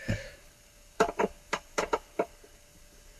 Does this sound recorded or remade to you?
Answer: remade